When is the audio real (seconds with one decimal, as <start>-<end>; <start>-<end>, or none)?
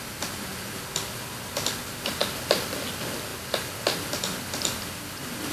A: 0.0-2.2; 2.8-3.3; 5.0-5.5